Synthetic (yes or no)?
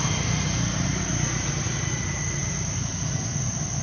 no